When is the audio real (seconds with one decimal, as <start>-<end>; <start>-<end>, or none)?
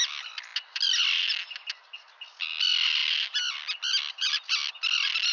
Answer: 0.0-5.3